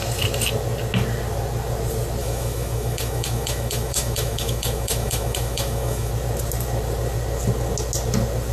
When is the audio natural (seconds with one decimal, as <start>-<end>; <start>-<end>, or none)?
0.0-2.2; 6.1-8.5